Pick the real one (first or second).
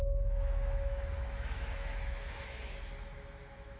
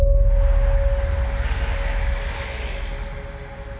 second